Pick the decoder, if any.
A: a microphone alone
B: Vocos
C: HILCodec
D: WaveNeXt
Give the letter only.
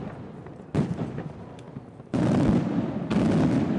A